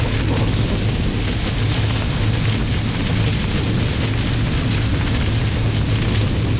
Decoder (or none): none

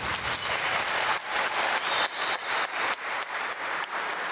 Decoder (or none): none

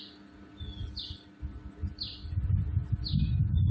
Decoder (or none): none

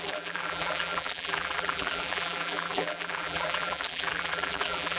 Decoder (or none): vocoder, BigVGAN v2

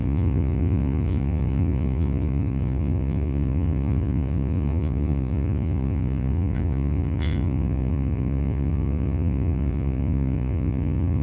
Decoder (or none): vocoder, Vocos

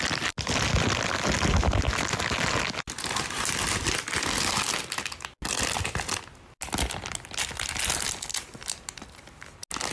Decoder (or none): none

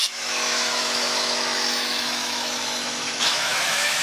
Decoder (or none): autoencoder, DAC-VAE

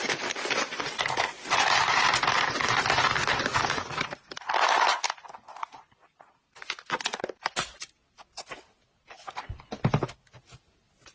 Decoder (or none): none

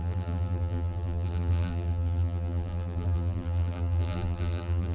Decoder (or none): vocoder, BigVGAN v2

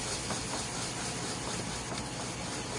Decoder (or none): none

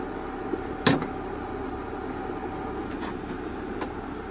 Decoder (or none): none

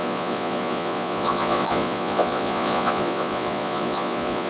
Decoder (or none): vocoder, Vocos